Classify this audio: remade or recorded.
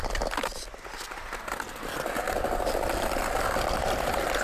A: recorded